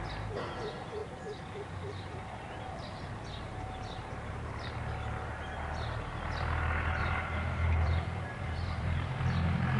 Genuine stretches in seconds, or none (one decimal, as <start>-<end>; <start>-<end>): 0.0-1.0; 4.8-7.0; 9.2-9.8